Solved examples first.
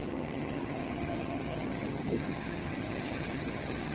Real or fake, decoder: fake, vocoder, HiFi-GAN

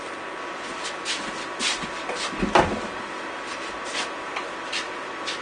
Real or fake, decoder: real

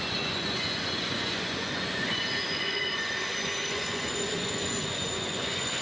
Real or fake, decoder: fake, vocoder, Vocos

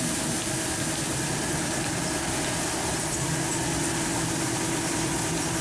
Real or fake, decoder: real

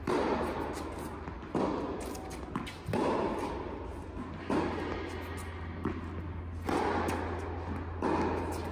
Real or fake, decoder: real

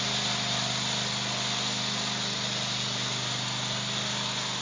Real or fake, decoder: real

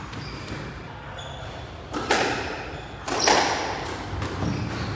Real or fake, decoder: real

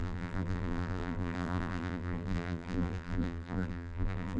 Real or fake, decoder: fake, vocoder, BigVGAN v2